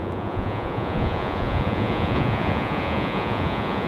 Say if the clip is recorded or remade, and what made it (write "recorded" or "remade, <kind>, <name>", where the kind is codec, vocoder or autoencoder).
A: remade, vocoder, Vocos